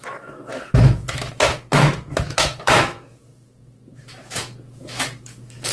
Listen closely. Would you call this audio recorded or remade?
remade